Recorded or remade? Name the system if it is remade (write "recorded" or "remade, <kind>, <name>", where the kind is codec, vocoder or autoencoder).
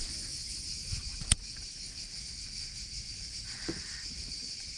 remade, autoencoder, DAC-VAE